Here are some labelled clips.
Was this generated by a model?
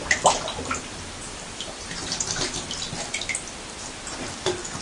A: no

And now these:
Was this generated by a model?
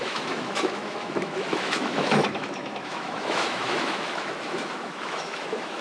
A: yes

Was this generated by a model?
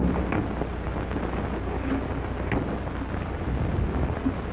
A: no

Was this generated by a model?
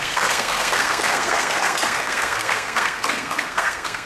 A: yes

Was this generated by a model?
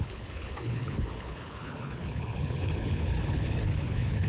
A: yes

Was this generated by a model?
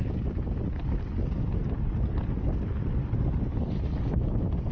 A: no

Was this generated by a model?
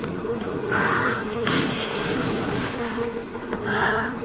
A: yes